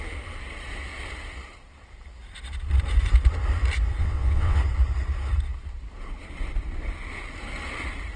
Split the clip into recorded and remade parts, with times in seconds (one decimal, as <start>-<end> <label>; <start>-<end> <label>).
0.0-4.0 recorded; 4.0-4.6 remade; 4.6-8.2 recorded

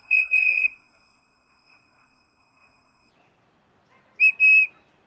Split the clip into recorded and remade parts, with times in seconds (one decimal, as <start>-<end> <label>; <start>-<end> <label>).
0.0-3.1 remade; 3.1-5.1 recorded

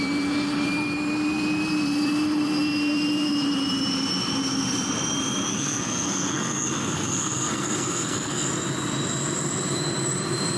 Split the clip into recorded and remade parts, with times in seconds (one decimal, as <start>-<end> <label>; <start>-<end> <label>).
0.0-5.5 recorded; 5.5-8.5 remade; 8.5-10.6 recorded